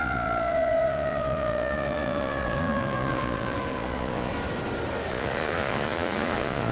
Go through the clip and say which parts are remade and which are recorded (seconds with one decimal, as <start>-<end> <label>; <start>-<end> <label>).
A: 0.0-4.3 remade; 4.3-5.1 recorded; 5.1-6.7 remade